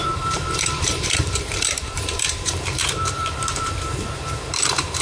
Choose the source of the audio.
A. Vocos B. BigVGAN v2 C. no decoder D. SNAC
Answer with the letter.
B